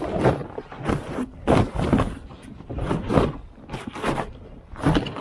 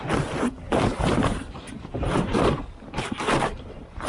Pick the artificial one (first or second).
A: second